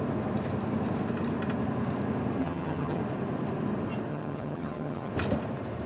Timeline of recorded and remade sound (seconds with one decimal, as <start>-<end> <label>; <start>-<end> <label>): 0.0-2.4 recorded; 2.4-3.0 remade; 3.0-4.1 recorded; 4.1-5.1 remade; 5.1-5.9 recorded

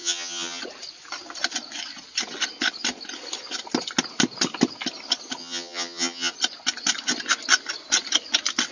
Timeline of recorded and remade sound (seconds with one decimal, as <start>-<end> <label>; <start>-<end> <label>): 0.0-0.6 remade; 0.6-5.4 recorded; 5.4-6.3 remade; 6.3-8.7 recorded

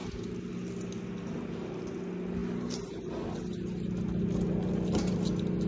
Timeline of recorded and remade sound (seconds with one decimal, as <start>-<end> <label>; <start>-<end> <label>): 0.0-5.7 recorded